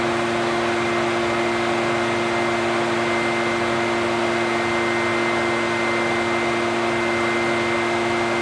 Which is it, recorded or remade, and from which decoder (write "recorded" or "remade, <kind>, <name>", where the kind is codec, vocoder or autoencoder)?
recorded